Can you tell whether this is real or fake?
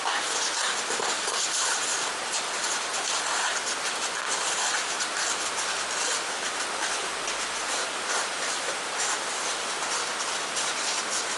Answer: real